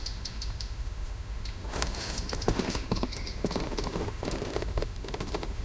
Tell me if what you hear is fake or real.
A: fake